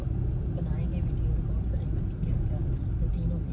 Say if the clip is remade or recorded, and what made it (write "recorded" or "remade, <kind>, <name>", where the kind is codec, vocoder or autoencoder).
recorded